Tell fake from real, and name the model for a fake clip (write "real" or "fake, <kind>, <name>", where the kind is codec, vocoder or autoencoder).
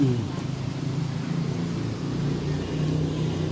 real